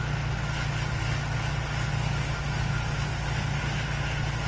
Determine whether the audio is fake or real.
real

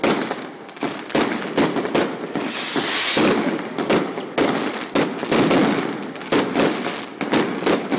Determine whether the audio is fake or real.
real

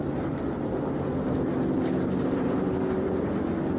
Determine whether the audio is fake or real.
real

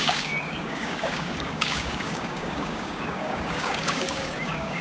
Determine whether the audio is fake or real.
fake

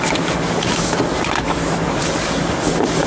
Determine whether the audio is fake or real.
fake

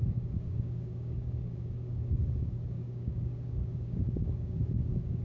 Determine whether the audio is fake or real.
fake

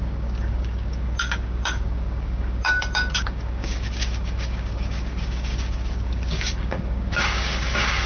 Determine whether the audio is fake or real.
fake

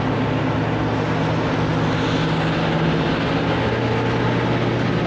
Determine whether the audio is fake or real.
real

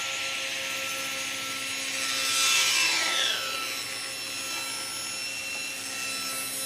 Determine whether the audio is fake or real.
real